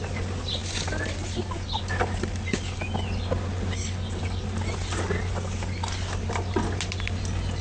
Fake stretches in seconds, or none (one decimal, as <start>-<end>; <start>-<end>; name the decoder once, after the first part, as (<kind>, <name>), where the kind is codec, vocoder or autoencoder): none